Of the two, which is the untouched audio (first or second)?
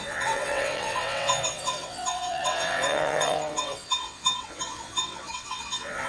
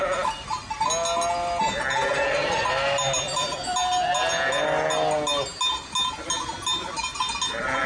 second